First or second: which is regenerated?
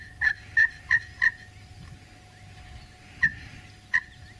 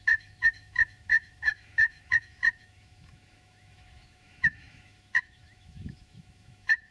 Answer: second